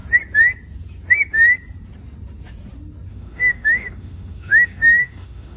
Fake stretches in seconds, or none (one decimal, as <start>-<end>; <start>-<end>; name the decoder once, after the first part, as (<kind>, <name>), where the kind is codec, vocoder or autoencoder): 3.1-5.6 (autoencoder, DAC-VAE)